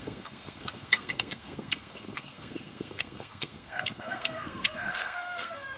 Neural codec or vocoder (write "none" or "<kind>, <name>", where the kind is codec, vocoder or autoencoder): codec, SNAC